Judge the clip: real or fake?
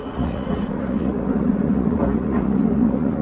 fake